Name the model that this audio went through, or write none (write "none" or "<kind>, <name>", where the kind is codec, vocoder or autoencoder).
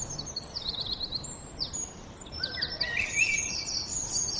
none